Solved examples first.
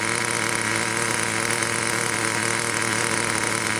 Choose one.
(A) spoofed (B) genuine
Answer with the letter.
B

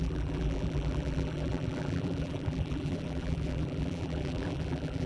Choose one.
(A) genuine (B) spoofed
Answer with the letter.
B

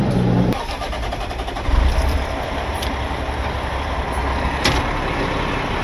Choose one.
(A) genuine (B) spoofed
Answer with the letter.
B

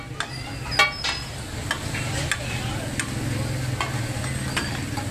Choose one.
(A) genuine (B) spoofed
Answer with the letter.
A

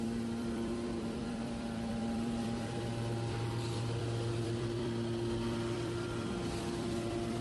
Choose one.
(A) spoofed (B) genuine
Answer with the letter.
A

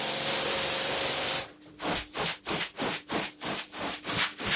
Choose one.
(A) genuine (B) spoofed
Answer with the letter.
B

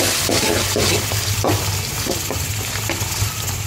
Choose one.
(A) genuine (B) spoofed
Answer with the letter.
A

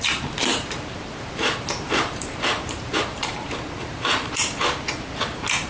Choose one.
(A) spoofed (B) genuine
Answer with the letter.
A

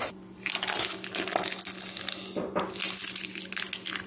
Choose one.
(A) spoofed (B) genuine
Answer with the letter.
B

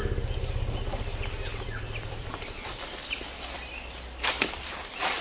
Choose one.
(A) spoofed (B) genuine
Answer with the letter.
A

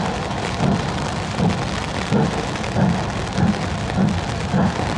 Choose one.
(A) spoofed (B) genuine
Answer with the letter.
A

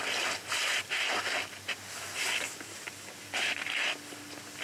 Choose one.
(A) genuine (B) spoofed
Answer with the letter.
A